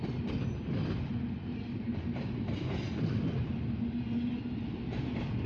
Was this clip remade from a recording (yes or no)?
no